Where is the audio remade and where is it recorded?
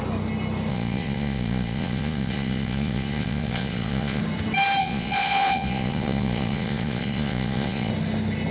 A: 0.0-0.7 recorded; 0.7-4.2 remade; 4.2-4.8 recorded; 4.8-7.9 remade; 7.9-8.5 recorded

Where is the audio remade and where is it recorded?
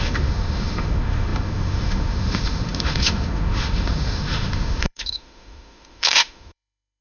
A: 0.0-7.0 remade